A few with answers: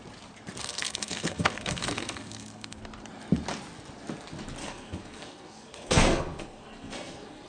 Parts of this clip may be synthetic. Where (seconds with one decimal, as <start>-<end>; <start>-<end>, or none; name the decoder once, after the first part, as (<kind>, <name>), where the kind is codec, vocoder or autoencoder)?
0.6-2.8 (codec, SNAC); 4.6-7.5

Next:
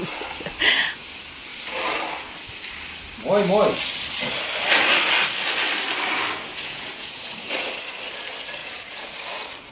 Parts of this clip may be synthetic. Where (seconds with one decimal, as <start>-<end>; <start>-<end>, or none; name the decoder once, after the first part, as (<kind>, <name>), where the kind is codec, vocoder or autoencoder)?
6.5-7.7 (vocoder, Vocos); 8.6-9.1

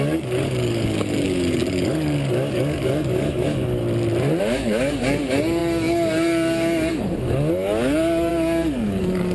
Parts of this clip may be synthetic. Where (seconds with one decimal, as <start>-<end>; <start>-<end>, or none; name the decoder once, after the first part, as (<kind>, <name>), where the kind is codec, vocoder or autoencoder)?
0.0-3.8 (codec, DAC); 4.4-9.3